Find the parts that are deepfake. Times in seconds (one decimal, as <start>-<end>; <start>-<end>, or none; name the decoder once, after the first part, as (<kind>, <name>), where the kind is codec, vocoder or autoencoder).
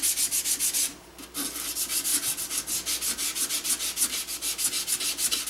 0.0-2.1 (vocoder, BigVGAN v2)